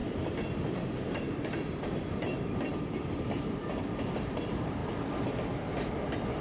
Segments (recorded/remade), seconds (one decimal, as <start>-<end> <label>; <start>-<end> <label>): 0.0-4.8 remade; 4.8-5.8 recorded; 5.8-6.4 remade